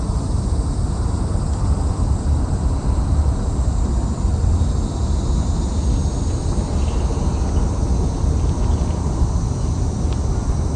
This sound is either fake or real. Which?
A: real